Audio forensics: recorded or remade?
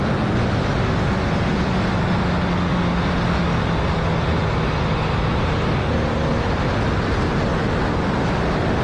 recorded